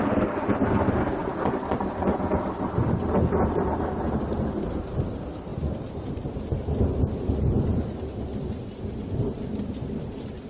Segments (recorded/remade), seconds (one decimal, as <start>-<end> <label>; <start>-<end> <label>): 0.0-10.5 recorded